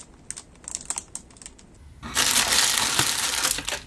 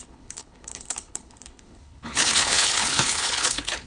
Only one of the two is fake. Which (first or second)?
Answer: second